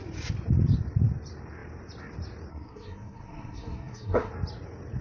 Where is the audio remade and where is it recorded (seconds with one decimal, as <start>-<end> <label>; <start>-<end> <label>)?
0.0-2.5 recorded; 2.5-4.3 remade; 4.3-5.0 recorded